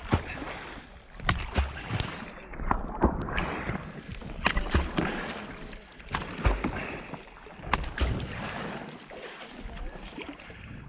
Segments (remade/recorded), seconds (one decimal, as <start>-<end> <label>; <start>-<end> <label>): 0.0-10.9 recorded